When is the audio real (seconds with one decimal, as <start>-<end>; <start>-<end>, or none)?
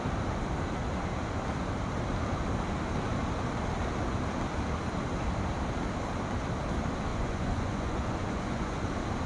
0.0-7.1; 8.8-9.3